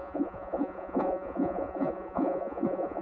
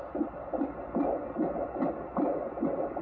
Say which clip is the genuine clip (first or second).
second